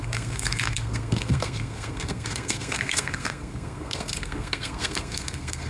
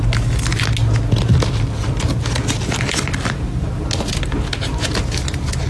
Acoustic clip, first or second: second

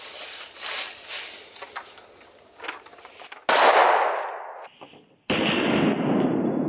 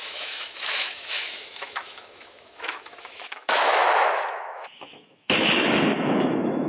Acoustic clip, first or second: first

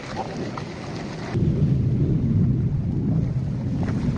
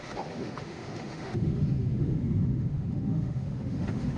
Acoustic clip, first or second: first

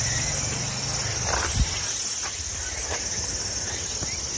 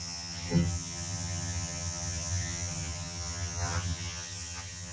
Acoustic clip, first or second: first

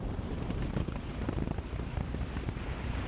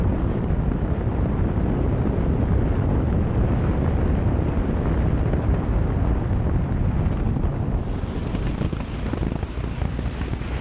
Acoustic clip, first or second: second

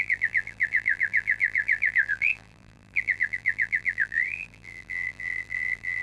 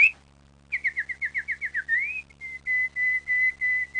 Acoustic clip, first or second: second